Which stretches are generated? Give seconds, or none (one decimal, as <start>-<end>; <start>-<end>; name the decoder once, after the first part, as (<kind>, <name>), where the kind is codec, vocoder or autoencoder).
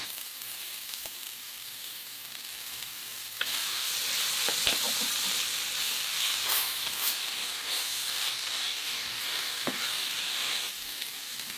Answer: 0.0-3.9 (codec, DAC); 5.8-11.6